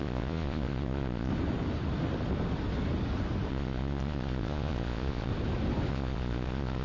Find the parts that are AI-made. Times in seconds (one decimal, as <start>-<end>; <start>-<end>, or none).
0.0-1.3; 3.5-5.3; 5.9-6.8